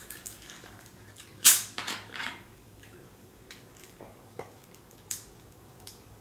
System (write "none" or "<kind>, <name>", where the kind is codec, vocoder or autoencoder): codec, DAC